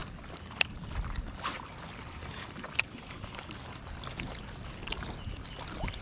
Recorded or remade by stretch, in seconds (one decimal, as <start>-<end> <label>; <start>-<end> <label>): 0.0-3.3 remade; 3.3-6.0 recorded